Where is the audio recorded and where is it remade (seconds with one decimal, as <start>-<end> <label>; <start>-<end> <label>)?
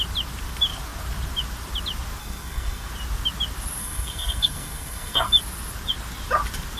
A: 0.0-2.2 recorded; 2.2-2.9 remade; 2.9-3.8 recorded; 3.8-5.3 remade; 5.3-6.8 recorded